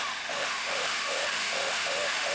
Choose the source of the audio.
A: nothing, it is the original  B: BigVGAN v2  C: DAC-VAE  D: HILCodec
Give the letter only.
C